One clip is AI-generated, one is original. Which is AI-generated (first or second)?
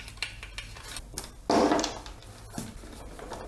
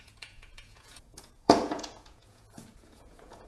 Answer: second